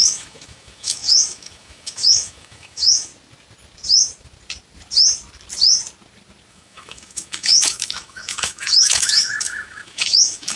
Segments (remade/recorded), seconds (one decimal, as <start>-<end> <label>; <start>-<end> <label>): 0.0-3.1 remade; 3.1-6.5 recorded; 6.5-10.6 remade